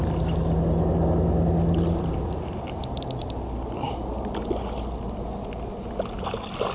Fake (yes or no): no